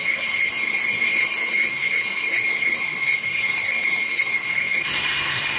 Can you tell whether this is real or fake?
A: fake